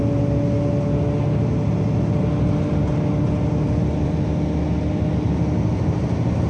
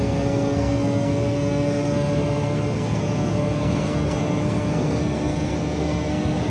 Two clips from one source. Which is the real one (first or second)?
first